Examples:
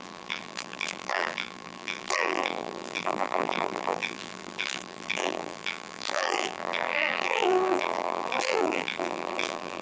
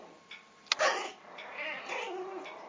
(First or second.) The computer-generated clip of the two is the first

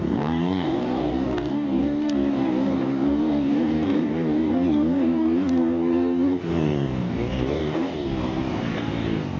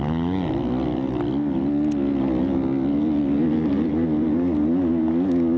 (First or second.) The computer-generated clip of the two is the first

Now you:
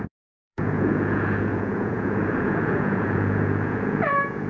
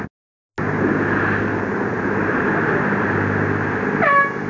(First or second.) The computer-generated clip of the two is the first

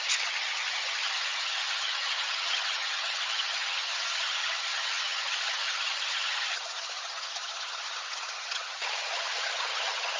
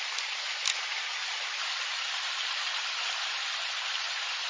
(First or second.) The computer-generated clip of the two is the first